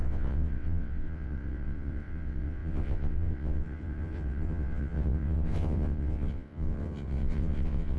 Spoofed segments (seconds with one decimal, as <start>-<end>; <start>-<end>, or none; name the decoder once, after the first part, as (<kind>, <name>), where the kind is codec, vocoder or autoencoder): 0.0-8.0 (vocoder, WaveNeXt)